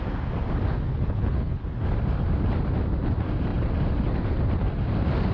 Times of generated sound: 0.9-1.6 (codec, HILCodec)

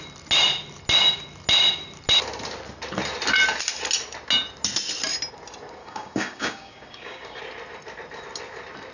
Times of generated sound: 5.8-7.4 (codec, DAC)

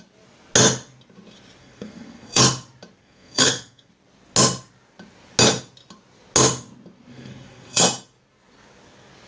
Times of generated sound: 1.6-2.4 (codec, SNAC); 3.0-3.9; 7.1-7.8

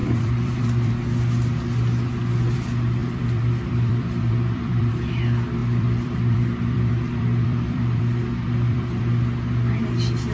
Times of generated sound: 0.0-0.9 (vocoder, BigVGAN v2); 3.0-4.9; 5.6-9.1

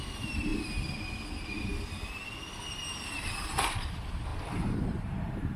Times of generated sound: 0.0-0.5 (vocoder, BigVGAN v2); 2.7-4.3; 5.0-5.6

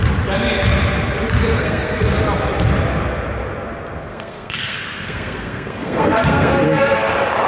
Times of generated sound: 1.5-2.0 (codec, SNAC); 4.1-7.1